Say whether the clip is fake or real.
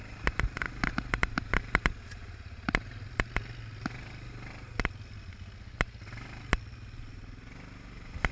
real